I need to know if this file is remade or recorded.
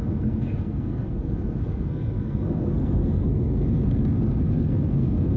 remade